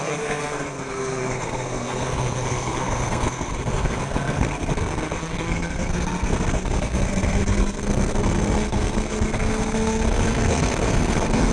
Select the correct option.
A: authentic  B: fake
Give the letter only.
B